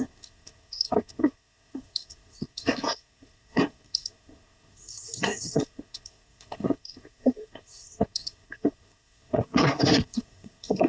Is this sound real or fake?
fake